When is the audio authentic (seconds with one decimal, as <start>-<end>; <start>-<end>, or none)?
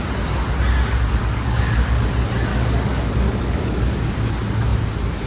0.0-1.2; 2.1-2.5; 4.3-5.3